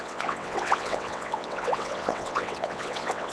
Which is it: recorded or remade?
remade